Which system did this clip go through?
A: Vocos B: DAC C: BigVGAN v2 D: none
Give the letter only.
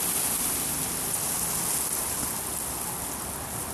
D